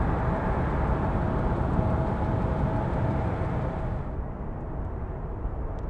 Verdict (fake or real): real